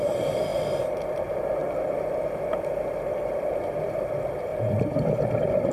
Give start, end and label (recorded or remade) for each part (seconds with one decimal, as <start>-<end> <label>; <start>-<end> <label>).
0.0-0.5 remade; 0.5-1.0 recorded; 1.0-1.6 remade; 1.6-2.9 recorded; 2.9-5.7 remade